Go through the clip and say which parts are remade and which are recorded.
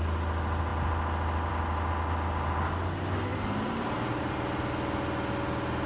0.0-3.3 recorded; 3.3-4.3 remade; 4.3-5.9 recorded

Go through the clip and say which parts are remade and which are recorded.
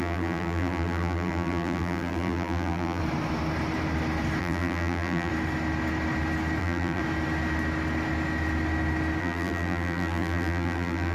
0.0-3.0 remade; 3.0-4.4 recorded; 4.4-5.3 remade; 5.3-6.6 recorded; 6.6-7.0 remade; 7.0-9.2 recorded; 9.2-11.1 remade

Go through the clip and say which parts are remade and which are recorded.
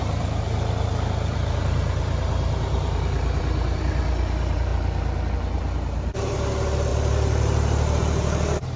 0.0-8.8 remade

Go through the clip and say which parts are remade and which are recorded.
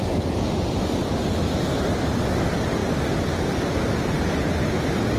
0.0-5.2 recorded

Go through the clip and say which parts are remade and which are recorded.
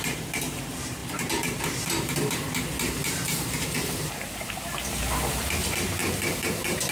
0.0-6.9 remade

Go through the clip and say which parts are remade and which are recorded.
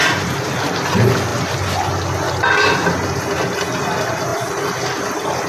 0.0-0.6 remade; 0.6-5.5 recorded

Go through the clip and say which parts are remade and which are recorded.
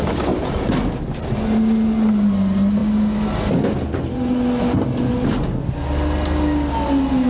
0.0-7.3 recorded